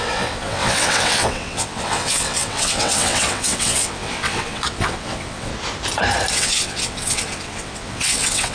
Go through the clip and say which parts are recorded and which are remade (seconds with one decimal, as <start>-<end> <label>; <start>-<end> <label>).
0.0-5.5 remade; 5.5-6.3 recorded; 6.3-8.5 remade